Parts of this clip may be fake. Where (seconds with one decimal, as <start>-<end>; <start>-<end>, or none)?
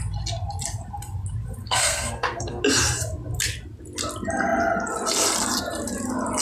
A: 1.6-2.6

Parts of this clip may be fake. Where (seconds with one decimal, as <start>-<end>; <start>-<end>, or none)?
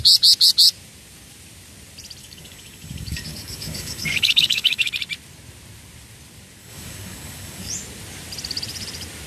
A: 2.2-4.9; 6.6-7.7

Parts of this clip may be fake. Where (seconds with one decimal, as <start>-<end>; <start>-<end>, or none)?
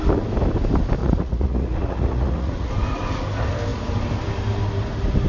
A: 1.0-2.7